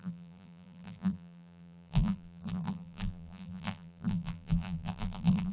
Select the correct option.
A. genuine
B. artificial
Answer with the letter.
B